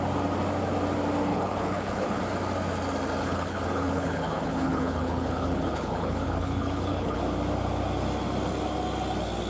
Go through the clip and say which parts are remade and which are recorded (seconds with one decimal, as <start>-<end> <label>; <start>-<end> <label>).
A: 0.0-1.3 recorded; 1.3-2.2 remade; 2.2-3.2 recorded; 3.2-7.2 remade; 7.2-9.5 recorded